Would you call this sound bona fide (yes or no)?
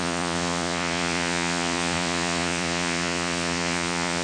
no